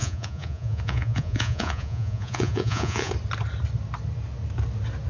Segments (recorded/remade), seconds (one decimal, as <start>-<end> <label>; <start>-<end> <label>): 0.0-3.1 remade; 3.1-5.1 recorded